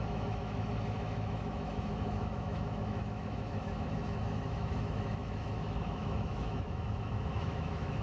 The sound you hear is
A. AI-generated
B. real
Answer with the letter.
A